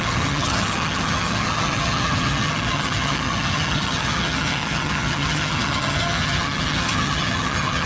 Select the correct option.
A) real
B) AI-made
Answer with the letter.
B